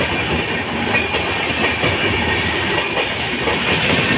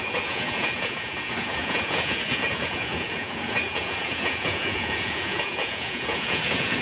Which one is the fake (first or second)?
second